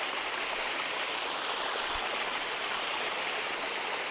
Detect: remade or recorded recorded